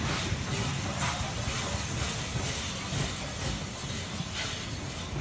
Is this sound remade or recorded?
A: recorded